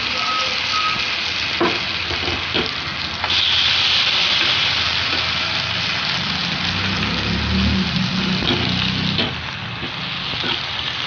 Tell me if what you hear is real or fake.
real